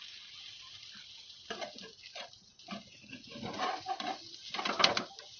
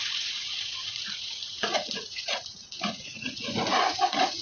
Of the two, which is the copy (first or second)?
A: second